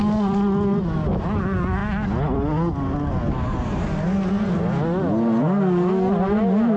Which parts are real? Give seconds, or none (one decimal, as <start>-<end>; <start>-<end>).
0.0-6.8